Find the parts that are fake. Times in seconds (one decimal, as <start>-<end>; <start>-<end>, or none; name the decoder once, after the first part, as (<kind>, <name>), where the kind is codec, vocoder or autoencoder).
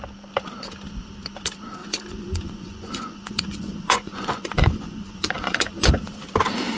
1.8-5.9 (vocoder, Vocos)